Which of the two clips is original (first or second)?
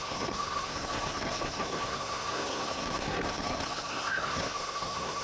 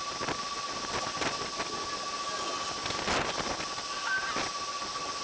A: second